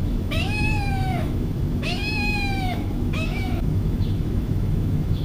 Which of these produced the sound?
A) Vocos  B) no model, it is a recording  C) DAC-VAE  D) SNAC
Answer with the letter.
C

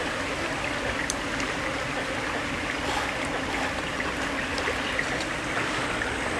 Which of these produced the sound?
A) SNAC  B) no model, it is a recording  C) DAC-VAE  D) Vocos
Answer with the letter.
B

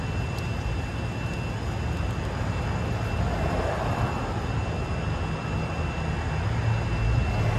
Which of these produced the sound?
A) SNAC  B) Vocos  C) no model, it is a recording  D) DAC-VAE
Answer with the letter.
C